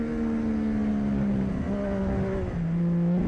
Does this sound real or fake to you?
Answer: real